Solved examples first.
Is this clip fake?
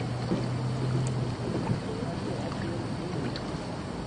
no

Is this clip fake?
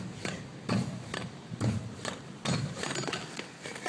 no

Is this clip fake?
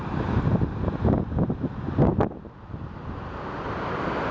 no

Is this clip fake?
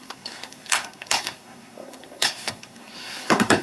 yes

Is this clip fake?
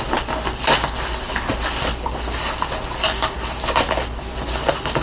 no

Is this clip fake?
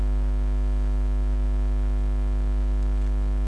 no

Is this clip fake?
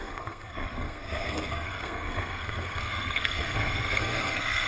yes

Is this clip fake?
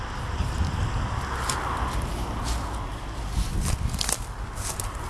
no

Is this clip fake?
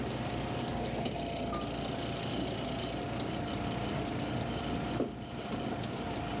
no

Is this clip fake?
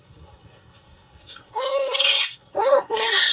yes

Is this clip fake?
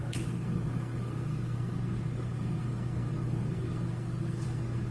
yes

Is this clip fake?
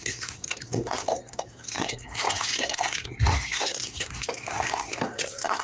yes